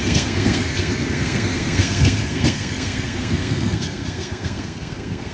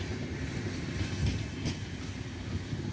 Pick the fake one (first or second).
first